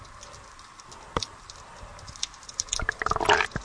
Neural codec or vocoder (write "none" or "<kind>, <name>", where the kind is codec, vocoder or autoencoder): none